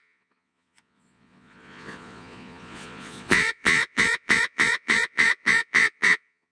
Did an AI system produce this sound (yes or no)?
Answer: yes